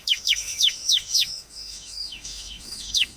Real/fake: fake